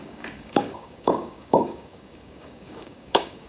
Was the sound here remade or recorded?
remade